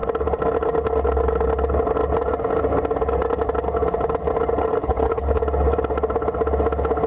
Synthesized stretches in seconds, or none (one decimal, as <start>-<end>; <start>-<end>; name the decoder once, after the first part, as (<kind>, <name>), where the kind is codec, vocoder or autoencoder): 4.8-5.4 (codec, HILCodec)